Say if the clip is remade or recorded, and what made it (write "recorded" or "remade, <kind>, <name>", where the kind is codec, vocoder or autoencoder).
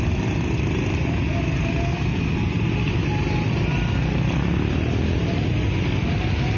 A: recorded